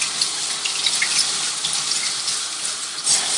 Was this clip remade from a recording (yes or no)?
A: no